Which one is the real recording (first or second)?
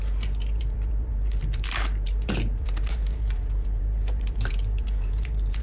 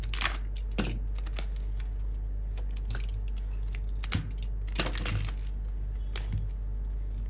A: second